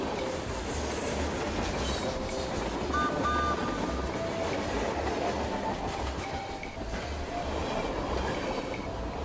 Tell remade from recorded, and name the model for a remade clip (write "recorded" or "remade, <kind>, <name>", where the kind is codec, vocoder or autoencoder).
recorded